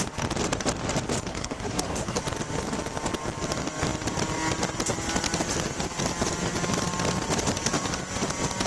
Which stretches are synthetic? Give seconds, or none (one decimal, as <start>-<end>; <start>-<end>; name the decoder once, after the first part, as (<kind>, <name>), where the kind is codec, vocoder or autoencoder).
1.3-2.2 (codec, SNAC)